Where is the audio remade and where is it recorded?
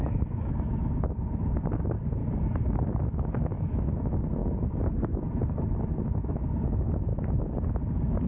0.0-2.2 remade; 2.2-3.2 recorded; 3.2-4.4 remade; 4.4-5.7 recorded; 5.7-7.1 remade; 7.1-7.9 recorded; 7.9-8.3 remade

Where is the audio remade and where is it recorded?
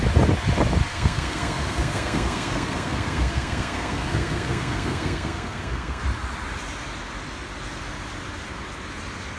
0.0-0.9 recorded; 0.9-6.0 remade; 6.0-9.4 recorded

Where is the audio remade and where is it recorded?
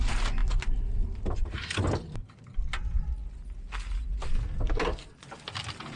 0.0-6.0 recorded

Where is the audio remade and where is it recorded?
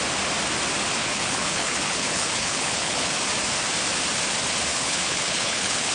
0.0-1.0 recorded; 1.0-3.1 remade; 3.1-4.7 recorded; 4.7-5.9 remade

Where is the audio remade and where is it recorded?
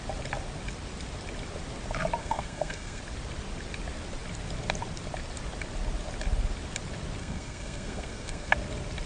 0.0-2.2 recorded; 2.2-3.0 remade; 3.0-7.2 recorded; 7.2-8.5 remade; 8.5-9.1 recorded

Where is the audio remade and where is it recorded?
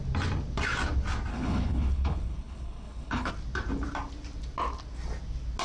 0.0-1.3 recorded; 1.3-3.3 remade; 3.3-5.6 recorded